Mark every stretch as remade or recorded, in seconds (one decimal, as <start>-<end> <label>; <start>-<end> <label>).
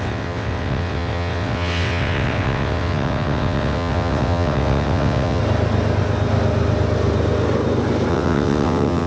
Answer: 0.0-5.4 remade; 5.4-8.1 recorded; 8.1-9.1 remade